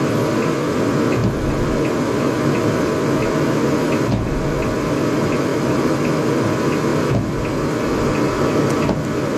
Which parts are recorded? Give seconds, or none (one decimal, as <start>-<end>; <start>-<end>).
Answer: 0.0-5.5; 6.1-9.4